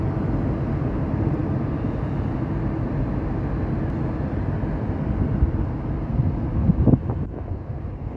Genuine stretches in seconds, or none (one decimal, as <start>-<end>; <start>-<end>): 0.0-8.2